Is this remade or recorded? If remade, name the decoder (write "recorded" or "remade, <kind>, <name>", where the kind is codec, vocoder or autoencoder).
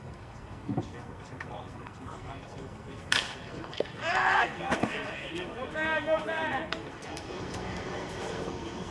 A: remade, codec, SNAC